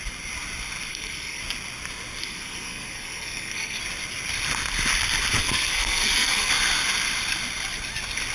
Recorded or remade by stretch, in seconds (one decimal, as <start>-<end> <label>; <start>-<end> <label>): 0.0-0.9 recorded; 0.9-1.4 remade; 1.4-2.2 recorded; 2.2-3.8 remade; 3.8-5.4 recorded; 5.4-6.5 remade; 6.5-8.3 recorded